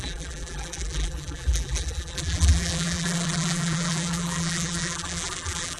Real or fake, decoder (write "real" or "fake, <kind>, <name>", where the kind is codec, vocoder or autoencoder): fake, vocoder, BigVGAN v2